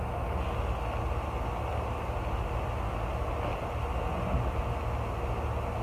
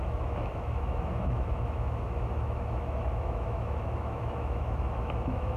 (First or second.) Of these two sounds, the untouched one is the first